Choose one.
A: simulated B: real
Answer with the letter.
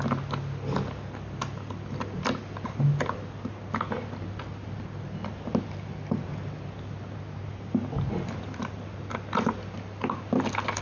B